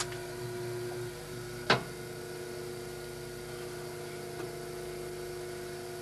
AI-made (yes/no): no